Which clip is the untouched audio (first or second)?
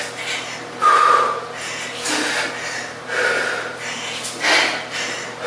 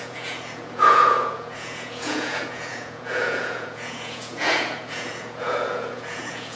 first